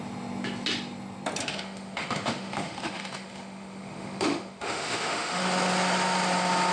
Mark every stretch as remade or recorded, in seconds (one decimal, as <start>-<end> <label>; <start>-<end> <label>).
0.0-1.4 recorded; 1.4-5.4 remade; 5.4-6.7 recorded